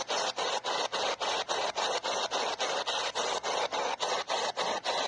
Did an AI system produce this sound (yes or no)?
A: no